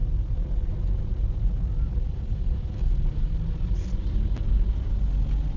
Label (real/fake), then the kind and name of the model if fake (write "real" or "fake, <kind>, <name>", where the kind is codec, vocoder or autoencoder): real